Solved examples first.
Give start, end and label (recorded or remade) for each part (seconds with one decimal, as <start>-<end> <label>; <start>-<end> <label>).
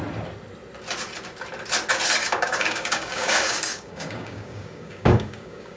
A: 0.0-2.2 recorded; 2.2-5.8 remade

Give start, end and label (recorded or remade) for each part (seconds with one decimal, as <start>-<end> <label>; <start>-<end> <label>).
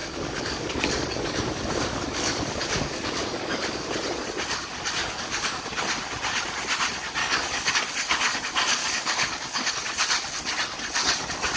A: 0.0-3.9 remade; 3.9-5.0 recorded; 5.0-5.6 remade; 5.6-7.2 recorded; 7.2-7.7 remade; 7.7-8.8 recorded; 8.8-9.7 remade; 9.7-11.6 recorded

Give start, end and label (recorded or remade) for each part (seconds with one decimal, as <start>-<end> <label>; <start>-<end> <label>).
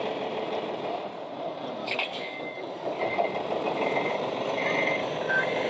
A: 0.0-1.8 recorded; 1.8-3.0 remade; 3.0-5.0 recorded; 5.0-5.7 remade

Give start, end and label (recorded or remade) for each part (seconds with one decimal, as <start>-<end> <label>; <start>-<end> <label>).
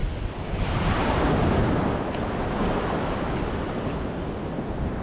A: 0.0-5.0 recorded